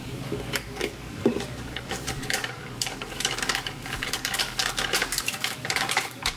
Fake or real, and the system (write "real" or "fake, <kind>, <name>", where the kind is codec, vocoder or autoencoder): fake, codec, DAC